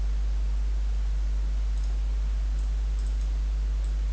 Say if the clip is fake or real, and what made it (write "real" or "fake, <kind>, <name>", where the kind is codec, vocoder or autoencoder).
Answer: real